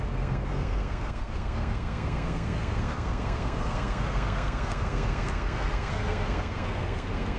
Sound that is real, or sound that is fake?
fake